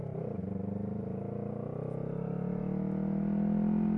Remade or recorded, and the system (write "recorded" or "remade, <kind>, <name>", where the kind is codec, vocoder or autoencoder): recorded